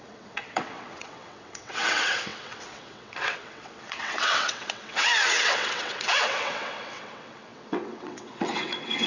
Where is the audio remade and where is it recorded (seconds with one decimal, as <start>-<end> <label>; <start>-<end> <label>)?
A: 0.0-9.1 remade